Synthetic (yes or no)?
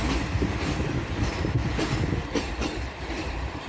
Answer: no